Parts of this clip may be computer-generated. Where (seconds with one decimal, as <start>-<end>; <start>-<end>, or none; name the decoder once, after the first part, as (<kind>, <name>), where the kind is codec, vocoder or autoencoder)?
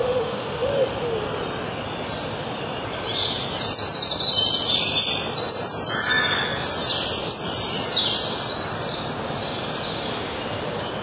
0.0-0.7 (autoencoder, DAC-VAE)